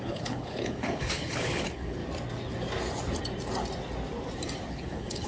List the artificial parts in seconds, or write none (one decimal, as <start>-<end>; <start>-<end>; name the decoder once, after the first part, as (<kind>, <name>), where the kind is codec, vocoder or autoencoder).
0.0-2.0 (codec, HILCodec); 4.7-5.3